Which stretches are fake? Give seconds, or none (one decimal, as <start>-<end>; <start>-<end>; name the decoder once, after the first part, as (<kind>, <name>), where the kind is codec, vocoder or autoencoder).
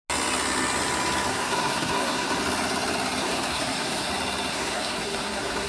1.3-2.4 (codec, SNAC); 3.2-4.1; 4.5-5.7